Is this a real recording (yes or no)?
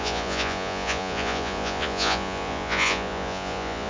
no